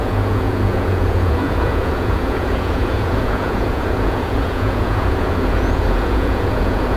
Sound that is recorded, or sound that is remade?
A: remade